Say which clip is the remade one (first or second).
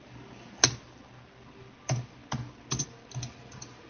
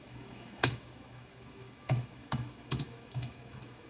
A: second